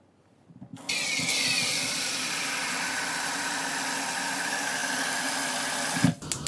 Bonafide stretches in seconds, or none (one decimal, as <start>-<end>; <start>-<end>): 0.0-6.5